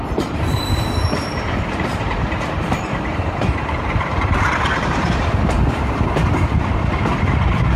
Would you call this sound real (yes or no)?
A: no